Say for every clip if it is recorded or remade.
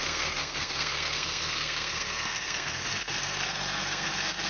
remade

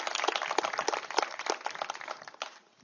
recorded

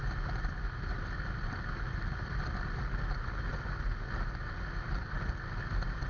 recorded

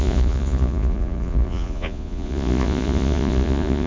remade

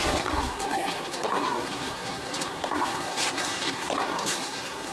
remade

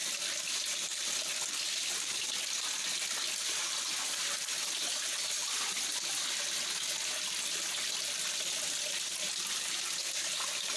recorded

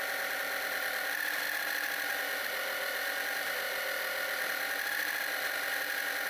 recorded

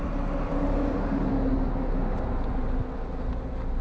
recorded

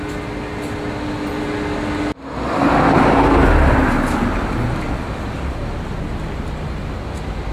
recorded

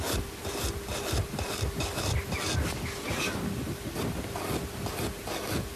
recorded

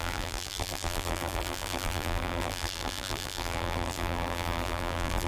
remade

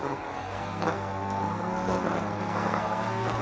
remade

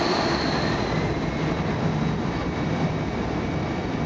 recorded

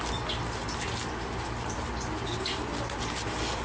recorded